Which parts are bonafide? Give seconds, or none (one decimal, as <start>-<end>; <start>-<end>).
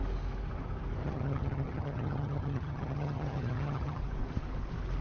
0.0-1.0; 4.0-5.0